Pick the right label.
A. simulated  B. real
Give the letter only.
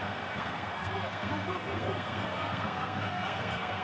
A